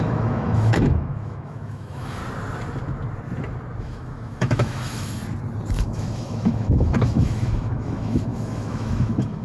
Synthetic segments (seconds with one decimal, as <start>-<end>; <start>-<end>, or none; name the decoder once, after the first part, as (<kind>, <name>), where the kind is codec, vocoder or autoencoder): 0.0-2.2 (autoencoder, DAC-VAE); 3.8-5.2; 5.7-9.4

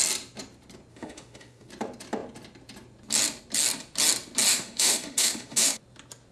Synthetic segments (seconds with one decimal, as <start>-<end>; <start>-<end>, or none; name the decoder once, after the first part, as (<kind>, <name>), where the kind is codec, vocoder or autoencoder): 0.9-1.7 (autoencoder, DAC-VAE); 4.5-5.8

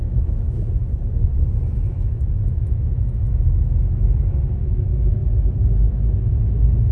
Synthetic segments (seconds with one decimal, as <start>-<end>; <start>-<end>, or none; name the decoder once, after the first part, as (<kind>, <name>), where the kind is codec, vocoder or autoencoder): 0.0-0.8 (autoencoder, DAC-VAE); 1.7-5.2; 5.9-6.9

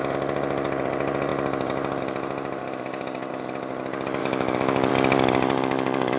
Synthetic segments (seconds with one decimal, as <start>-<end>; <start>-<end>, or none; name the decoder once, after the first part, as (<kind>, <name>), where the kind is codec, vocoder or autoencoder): 4.2-4.9 (autoencoder, DAC-VAE)